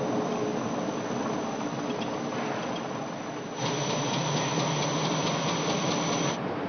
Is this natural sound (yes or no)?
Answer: yes